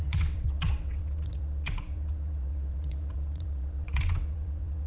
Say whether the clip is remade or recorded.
remade